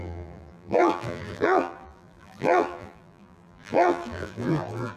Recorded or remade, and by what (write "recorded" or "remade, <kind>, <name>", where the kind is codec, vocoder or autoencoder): remade, vocoder, BigVGAN v2